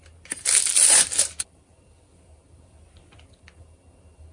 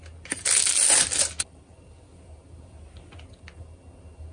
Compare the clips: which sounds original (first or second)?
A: second